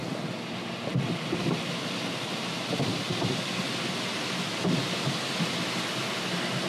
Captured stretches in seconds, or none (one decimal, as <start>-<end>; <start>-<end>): 0.0-6.7